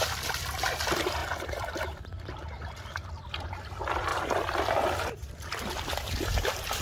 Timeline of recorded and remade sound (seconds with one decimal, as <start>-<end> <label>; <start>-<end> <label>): 0.0-1.2 recorded; 1.2-2.2 remade; 2.2-4.1 recorded; 4.1-5.3 remade; 5.3-6.8 recorded